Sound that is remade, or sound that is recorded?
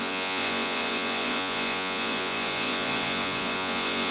remade